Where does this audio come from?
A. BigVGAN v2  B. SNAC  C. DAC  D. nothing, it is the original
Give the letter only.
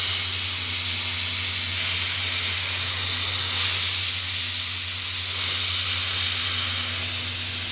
D